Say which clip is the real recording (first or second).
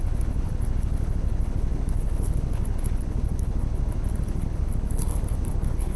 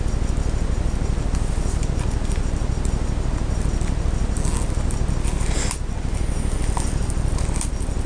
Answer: second